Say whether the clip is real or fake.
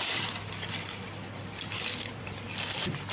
fake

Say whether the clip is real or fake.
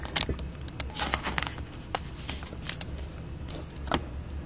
real